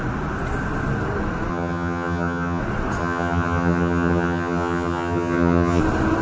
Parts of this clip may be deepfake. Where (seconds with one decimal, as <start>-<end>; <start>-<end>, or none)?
1.5-2.6; 3.0-5.8